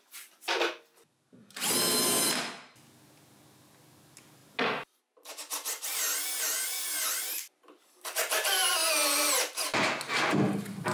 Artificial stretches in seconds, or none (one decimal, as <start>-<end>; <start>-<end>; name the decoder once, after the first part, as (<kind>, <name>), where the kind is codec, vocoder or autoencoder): none

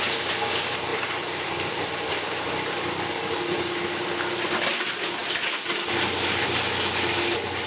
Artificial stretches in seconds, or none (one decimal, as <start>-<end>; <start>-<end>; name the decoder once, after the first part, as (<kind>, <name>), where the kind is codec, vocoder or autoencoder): 0.9-2.9 (vocoder, BigVGAN v2)

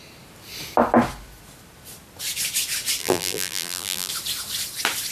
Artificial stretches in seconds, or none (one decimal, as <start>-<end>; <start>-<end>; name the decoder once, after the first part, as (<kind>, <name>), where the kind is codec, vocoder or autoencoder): 3.0-4.1 (vocoder, BigVGAN v2)

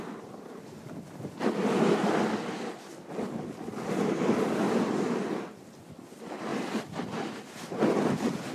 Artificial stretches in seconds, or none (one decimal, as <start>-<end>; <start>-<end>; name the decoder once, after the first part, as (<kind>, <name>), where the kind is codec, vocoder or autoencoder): 0.0-2.0 (vocoder, BigVGAN v2); 3.2-8.5

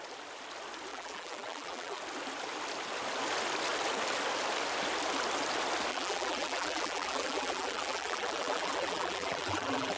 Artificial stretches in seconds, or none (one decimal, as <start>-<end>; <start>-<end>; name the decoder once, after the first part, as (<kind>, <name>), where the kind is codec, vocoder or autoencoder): 0.9-2.0 (vocoder, BigVGAN v2); 5.9-10.0